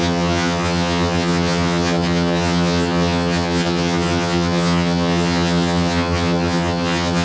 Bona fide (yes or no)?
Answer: no